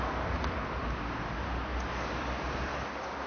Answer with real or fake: real